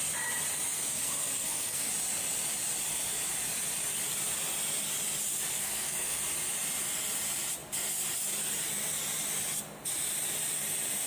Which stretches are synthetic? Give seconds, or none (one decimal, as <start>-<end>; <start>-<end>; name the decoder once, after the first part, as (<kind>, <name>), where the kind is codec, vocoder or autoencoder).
0.7-1.9 (codec, SNAC); 5.5-6.2